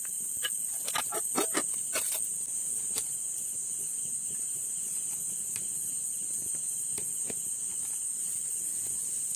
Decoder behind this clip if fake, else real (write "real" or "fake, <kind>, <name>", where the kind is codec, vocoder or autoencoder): real